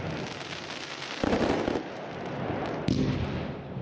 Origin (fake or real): real